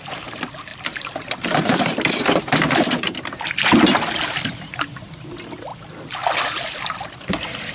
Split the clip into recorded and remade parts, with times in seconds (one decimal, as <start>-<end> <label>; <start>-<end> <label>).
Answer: 0.0-5.7 remade; 5.7-7.3 recorded; 7.3-7.7 remade